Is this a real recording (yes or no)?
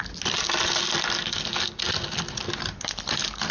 yes